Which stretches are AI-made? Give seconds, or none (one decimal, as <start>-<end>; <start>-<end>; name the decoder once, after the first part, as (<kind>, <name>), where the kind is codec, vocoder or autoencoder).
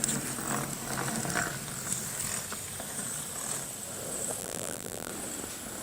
4.4-5.1 (vocoder, BigVGAN v2)